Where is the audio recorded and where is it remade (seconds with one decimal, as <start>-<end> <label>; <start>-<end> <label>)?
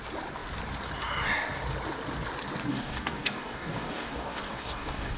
0.0-2.7 recorded; 2.7-5.2 remade